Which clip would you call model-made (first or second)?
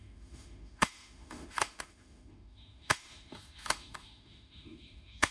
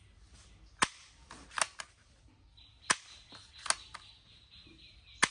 first